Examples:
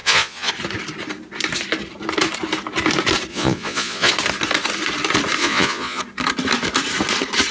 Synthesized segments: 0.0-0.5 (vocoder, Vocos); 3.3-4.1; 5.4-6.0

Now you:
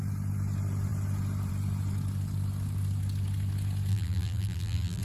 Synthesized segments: 3.9-5.0 (vocoder, BigVGAN v2)

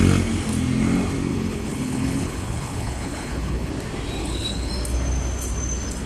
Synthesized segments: 1.3-3.7 (codec, HILCodec); 4.2-4.7